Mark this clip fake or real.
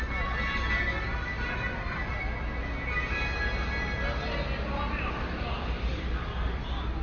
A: real